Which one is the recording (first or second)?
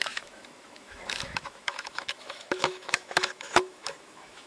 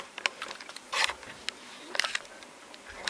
second